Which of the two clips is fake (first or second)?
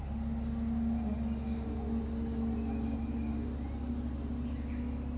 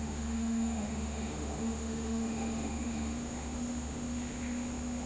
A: second